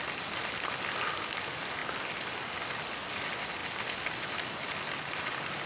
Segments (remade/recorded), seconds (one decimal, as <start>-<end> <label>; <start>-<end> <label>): 0.0-5.7 recorded